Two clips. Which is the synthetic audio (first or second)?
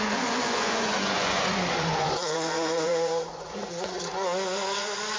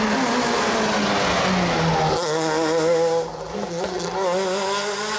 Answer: first